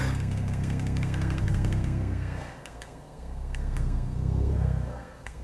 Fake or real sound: fake